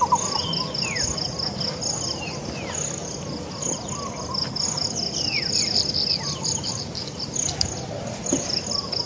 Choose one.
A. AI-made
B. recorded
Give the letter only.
B